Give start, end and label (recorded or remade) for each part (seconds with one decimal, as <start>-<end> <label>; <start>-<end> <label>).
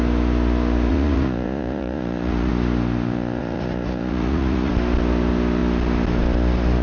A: 0.0-0.9 recorded; 0.9-2.5 remade; 2.5-3.4 recorded; 3.4-4.7 remade; 4.7-6.8 recorded